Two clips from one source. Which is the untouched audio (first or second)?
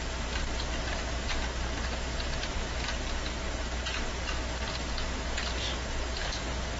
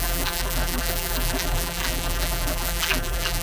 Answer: first